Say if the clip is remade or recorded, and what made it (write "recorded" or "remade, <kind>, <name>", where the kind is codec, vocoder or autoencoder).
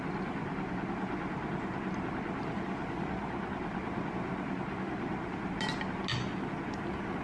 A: recorded